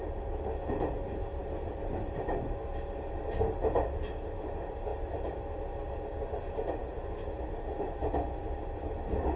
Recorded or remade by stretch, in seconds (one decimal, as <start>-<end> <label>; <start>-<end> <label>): 0.0-9.4 recorded